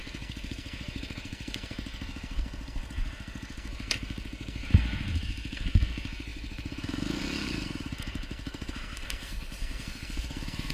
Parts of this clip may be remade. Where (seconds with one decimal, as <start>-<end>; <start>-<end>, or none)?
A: 0.0-10.7